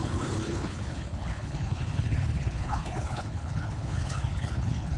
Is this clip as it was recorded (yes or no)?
no